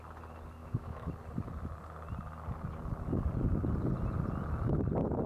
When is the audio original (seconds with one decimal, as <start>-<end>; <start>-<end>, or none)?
0.0-0.6; 1.1-5.3